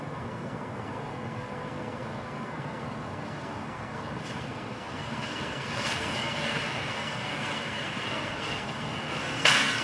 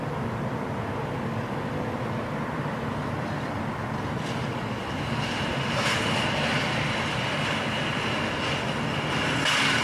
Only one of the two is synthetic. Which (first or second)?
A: first